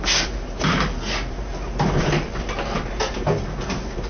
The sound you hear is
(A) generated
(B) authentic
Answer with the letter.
B